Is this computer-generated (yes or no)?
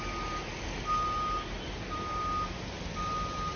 no